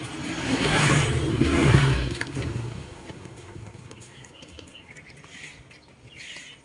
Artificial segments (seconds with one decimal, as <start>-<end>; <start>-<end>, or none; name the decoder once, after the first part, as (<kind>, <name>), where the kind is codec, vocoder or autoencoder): 0.4-0.9 (codec, SNAC); 1.3-4.9